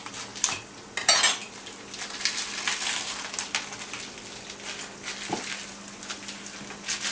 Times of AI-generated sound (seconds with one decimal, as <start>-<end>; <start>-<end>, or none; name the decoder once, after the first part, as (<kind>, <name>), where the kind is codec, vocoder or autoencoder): none